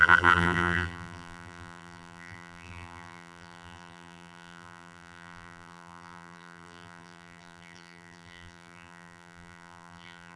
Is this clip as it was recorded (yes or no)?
no